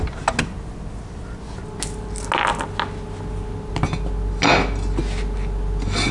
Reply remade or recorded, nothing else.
recorded